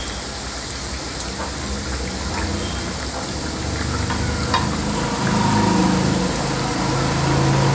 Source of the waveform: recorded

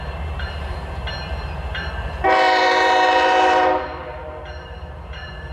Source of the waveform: remade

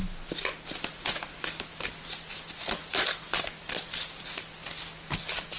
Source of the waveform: recorded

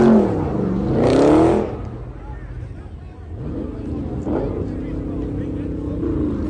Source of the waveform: recorded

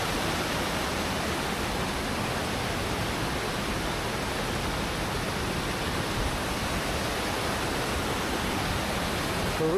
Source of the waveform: recorded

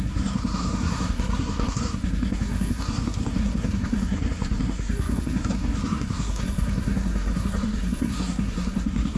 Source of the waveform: remade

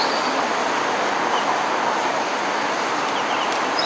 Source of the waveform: recorded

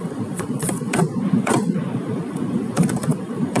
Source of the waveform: remade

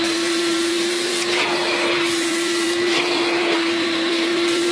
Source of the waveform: remade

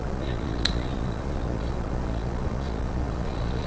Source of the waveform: remade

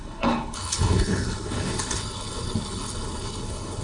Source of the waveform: remade